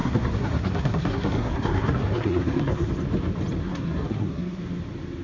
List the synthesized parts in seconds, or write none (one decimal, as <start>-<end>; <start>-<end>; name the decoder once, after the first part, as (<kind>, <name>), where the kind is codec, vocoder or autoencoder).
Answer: 0.0-2.9 (codec, SNAC); 3.6-4.6